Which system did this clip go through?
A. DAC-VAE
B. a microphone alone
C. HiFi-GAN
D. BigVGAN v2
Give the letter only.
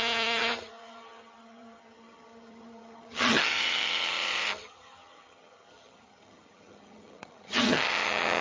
C